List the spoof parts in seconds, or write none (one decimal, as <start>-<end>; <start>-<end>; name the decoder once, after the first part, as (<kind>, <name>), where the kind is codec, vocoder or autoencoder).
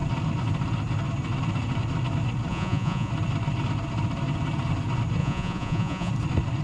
2.5-3.1 (vocoder, Vocos); 5.2-6.1